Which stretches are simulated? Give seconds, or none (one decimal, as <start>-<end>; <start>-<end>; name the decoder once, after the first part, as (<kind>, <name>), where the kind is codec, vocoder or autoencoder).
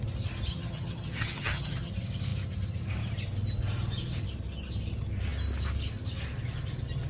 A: 0.5-1.9 (vocoder, HiFi-GAN)